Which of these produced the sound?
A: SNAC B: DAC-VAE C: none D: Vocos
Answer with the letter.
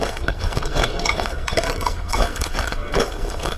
A